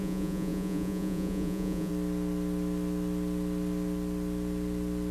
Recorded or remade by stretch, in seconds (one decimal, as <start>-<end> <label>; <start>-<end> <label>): 0.0-1.9 remade; 1.9-5.1 recorded